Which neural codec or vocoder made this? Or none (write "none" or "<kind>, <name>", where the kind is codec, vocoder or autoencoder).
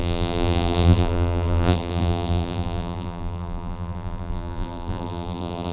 vocoder, BigVGAN v2